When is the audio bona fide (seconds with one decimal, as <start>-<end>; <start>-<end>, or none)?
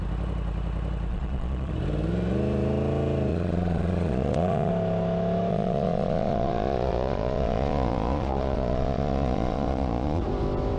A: 0.0-1.1; 1.7-3.3; 4.7-5.5; 10.2-10.8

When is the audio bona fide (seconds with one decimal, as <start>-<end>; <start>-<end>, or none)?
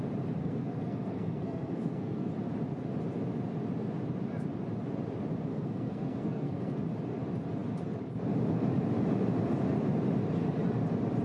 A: 0.0-0.4; 2.3-5.5; 6.8-11.2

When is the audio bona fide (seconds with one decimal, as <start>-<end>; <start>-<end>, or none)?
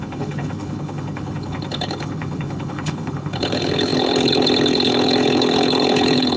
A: none